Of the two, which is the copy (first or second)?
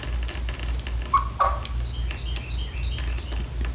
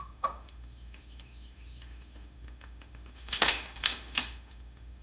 second